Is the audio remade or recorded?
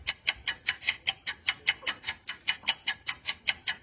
recorded